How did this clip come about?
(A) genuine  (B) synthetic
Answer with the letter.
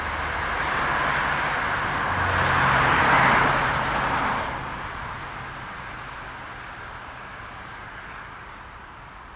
A